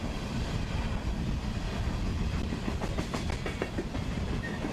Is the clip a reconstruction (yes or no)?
no